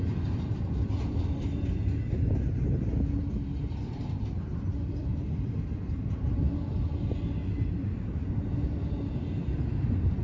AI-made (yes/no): no